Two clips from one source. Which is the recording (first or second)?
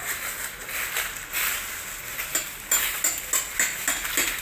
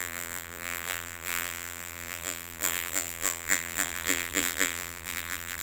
first